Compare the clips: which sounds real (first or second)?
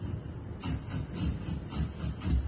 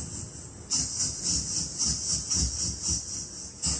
second